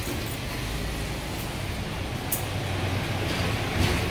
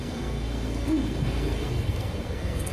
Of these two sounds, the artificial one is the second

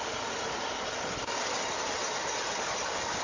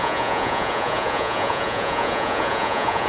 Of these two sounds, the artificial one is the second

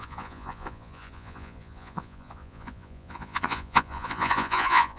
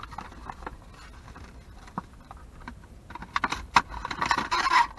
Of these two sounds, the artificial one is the first